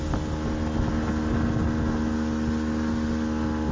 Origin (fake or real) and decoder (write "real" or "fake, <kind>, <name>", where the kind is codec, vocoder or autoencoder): real